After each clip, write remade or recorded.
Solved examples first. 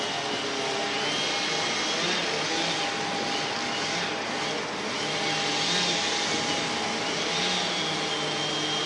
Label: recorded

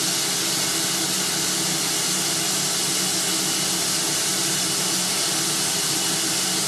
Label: recorded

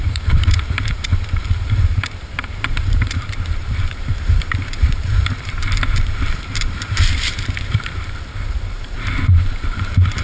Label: remade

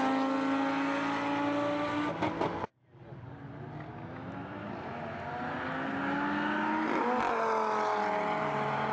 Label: recorded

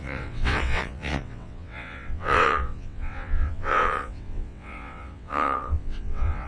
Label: remade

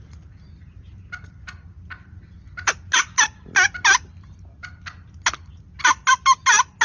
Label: recorded